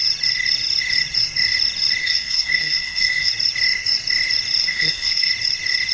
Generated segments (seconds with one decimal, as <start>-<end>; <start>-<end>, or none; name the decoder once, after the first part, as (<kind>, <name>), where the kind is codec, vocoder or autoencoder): 2.0-3.3 (codec, SNAC); 4.6-5.3